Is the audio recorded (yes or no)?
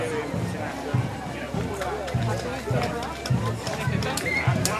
yes